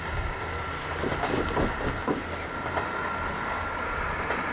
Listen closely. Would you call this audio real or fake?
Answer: real